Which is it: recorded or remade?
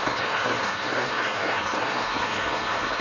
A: remade